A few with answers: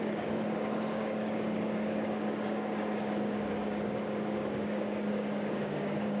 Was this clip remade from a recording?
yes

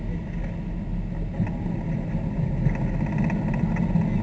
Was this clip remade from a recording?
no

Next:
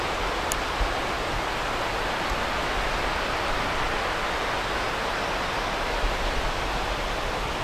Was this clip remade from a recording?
no